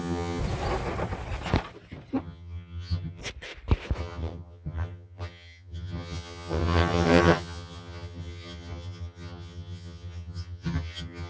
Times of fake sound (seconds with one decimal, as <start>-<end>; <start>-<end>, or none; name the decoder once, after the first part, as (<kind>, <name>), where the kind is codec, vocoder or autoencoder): 0.0-0.4 (vocoder, HiFi-GAN); 2.2-3.2; 4.0-11.3